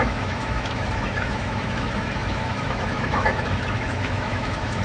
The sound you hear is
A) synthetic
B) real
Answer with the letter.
A